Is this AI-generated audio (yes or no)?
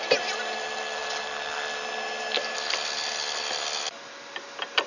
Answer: no